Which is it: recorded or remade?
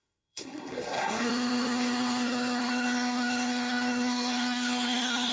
remade